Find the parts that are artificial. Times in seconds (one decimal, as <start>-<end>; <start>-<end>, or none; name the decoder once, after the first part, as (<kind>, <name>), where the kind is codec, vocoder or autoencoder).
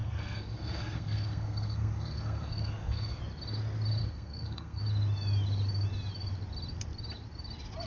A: 0.0-3.2 (codec, SNAC); 4.0-4.8